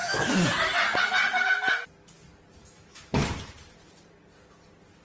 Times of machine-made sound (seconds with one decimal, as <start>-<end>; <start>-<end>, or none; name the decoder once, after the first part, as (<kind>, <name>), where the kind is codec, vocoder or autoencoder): 2.6-3.2 (autoencoder, DAC-VAE)